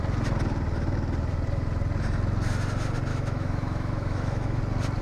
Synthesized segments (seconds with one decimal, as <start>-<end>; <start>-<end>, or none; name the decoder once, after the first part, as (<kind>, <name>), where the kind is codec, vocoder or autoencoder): 3.1-4.6 (autoencoder, DAC-VAE)

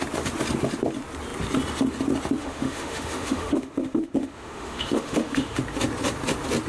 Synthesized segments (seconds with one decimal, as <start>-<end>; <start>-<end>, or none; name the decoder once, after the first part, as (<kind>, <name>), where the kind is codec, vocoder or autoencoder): 2.4-5.6 (autoencoder, DAC-VAE)

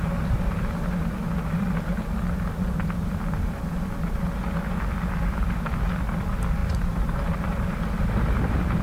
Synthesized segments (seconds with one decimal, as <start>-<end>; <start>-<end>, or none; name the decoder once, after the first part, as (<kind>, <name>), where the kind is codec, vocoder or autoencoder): none

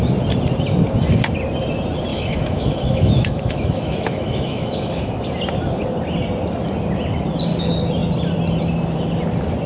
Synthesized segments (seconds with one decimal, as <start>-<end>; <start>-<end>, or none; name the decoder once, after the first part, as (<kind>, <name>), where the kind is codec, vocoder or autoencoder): 2.1-5.1 (autoencoder, DAC-VAE)